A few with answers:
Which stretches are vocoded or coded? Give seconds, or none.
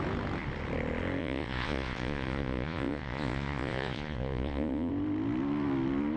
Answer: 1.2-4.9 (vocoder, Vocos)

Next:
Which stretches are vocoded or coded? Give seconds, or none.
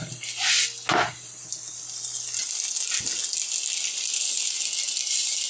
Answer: none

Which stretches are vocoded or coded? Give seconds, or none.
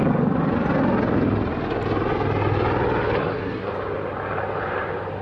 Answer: 3.2-3.7 (codec, SNAC)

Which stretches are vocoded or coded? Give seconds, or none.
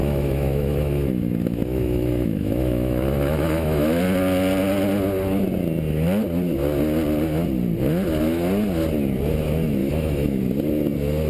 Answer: 0.0-4.0 (autoencoder, DAC-VAE); 9.8-10.4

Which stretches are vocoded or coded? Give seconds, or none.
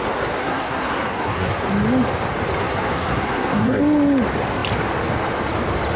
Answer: 0.4-1.6 (codec, SNAC); 2.6-3.8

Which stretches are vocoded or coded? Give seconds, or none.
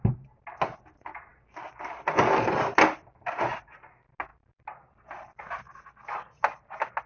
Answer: none